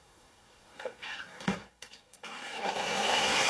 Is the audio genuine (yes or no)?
no